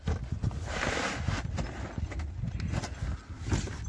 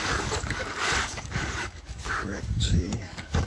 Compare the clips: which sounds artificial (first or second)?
second